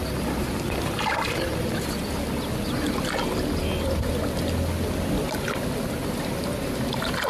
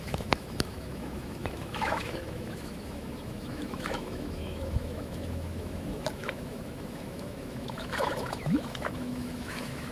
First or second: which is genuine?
first